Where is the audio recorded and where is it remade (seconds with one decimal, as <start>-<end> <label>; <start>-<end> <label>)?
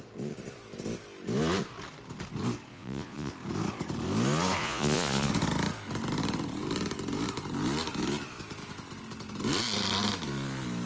0.0-2.7 recorded; 2.7-3.3 remade; 3.3-4.6 recorded; 4.6-5.3 remade; 5.3-10.9 recorded